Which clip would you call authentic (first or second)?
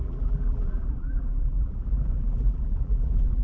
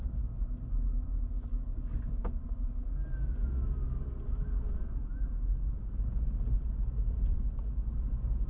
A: second